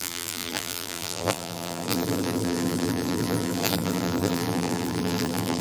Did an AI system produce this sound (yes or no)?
yes